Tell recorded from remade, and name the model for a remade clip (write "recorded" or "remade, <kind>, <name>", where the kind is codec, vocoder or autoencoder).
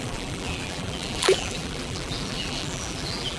remade, vocoder, BigVGAN v2